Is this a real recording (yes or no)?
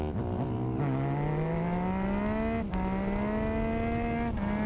yes